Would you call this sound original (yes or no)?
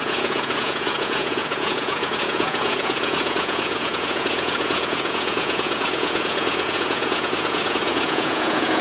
no